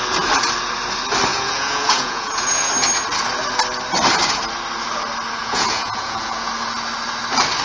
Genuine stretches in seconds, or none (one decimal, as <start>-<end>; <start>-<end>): 0.0-1.3; 2.7-5.4; 6.5-7.6